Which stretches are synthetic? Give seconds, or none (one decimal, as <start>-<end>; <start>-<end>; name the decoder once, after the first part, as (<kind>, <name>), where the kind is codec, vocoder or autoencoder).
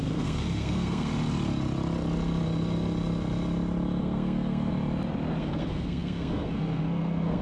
0.0-1.1 (codec, SNAC); 4.0-4.7; 5.4-7.4